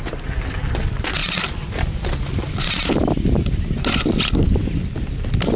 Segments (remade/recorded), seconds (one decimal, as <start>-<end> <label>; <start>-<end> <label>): 0.0-5.6 recorded